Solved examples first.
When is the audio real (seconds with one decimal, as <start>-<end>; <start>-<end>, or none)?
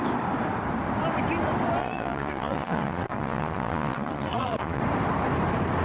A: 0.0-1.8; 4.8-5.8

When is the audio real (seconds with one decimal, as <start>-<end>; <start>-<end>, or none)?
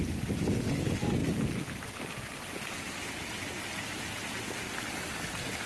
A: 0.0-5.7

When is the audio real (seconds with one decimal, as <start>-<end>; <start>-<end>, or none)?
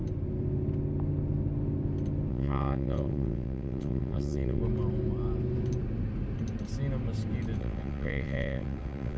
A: 0.0-2.3; 4.6-7.6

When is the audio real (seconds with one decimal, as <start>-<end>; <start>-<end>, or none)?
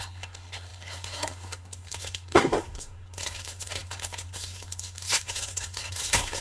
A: none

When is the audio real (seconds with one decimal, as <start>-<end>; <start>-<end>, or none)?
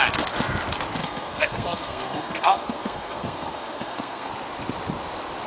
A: 0.0-1.0; 4.3-5.5